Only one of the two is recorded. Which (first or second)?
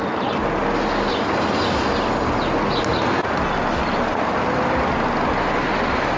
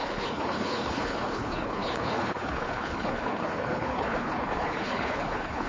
first